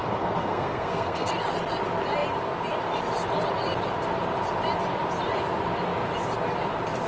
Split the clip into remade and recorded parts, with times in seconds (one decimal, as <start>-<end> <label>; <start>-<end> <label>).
0.0-1.3 remade; 1.3-7.1 recorded